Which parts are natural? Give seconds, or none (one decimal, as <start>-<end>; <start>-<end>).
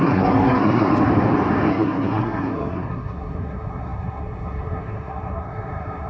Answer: 0.9-1.7